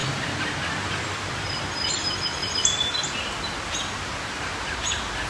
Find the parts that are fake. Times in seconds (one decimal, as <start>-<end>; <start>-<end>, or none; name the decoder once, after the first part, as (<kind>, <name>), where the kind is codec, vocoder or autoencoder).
none